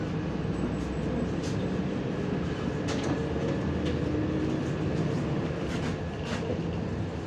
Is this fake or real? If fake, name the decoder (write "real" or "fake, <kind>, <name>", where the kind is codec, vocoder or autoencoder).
real